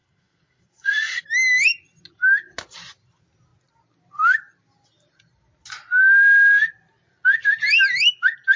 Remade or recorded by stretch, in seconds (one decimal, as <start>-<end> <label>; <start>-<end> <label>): 0.0-1.2 remade; 1.2-8.6 recorded